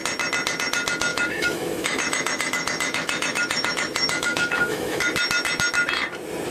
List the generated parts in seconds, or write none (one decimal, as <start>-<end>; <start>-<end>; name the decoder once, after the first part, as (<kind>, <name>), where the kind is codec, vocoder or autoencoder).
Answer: 1.1-5.0 (autoencoder, DAC-VAE)